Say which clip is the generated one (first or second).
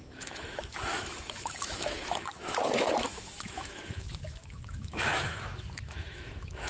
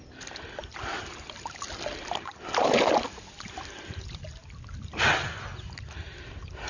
first